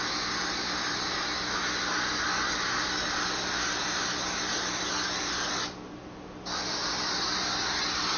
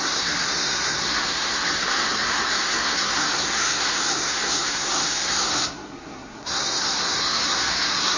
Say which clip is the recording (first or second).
first